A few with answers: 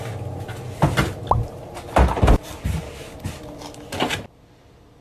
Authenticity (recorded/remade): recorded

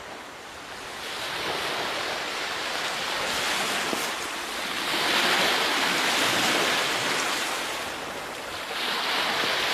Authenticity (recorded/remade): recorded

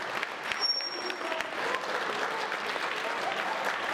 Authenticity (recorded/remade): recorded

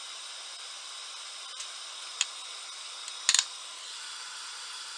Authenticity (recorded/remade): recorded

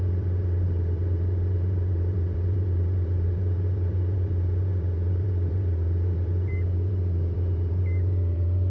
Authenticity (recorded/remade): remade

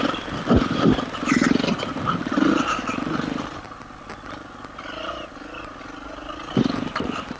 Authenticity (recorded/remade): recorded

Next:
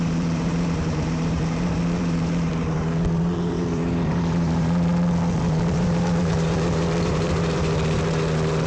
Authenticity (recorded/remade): remade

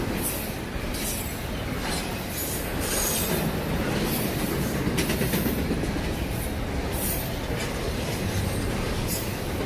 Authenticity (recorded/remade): recorded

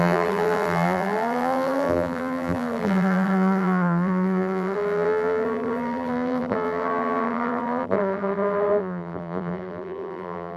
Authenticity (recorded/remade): remade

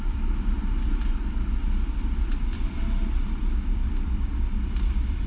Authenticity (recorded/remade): remade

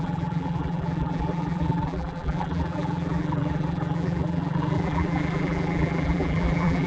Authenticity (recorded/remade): remade